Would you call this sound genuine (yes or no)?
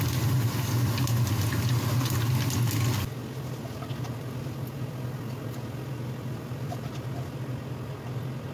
yes